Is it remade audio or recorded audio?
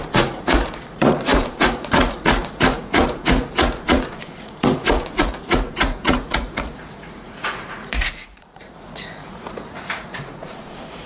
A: remade